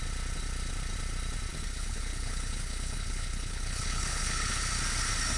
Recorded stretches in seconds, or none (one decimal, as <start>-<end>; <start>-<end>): 0.0-1.5; 4.6-5.4